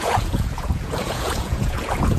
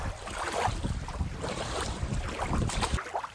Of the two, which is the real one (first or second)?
second